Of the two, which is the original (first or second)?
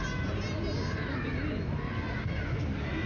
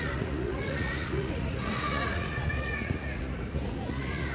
first